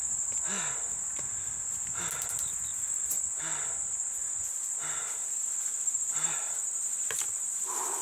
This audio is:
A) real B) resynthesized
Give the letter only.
A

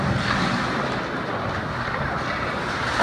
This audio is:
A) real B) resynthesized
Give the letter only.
A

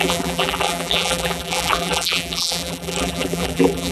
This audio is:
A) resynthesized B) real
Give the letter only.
A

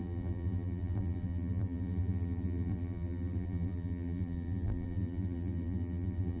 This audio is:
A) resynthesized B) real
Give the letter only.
A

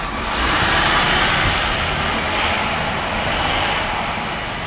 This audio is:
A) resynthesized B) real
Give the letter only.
A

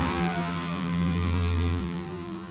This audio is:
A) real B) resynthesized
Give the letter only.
B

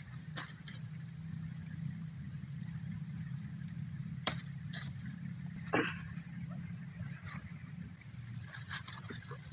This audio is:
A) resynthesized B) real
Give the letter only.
A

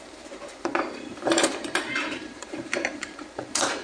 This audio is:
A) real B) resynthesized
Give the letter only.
B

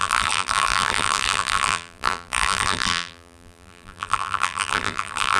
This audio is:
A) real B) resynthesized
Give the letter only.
B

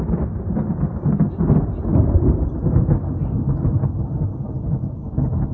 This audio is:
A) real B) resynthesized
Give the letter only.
A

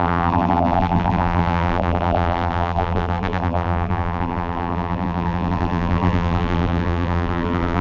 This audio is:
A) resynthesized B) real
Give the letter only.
A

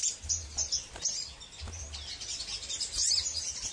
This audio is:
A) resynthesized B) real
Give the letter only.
B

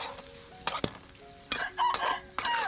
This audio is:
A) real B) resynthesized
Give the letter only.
A